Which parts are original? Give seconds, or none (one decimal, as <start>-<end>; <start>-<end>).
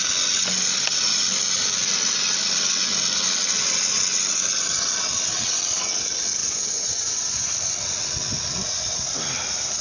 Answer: 0.0-6.4; 7.5-9.8